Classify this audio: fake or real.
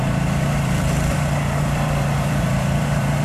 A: fake